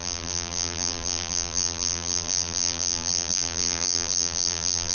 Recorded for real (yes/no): no